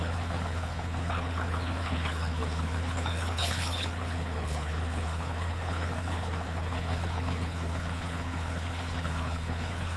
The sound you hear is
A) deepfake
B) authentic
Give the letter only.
A